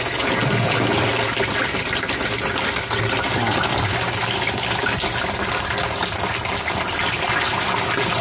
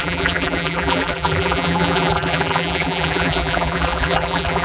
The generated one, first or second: second